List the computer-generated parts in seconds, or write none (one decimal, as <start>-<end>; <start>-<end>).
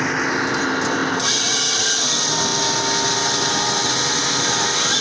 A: none